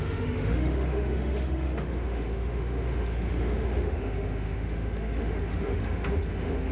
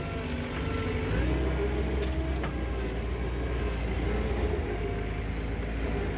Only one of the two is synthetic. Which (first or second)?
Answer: first